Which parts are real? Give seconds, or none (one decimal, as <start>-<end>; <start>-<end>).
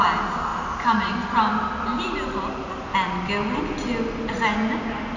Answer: 0.0-5.2